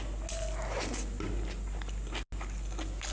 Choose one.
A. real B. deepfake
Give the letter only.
A